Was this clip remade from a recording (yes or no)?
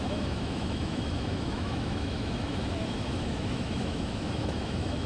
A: yes